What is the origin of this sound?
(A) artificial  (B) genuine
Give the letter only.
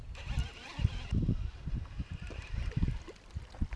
B